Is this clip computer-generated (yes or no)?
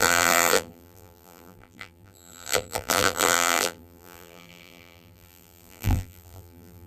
yes